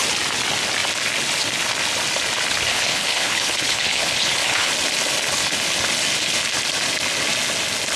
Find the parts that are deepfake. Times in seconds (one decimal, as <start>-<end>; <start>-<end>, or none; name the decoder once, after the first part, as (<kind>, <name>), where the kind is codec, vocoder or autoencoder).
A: 2.7-4.7 (codec, HILCodec)